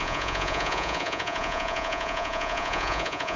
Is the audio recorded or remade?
remade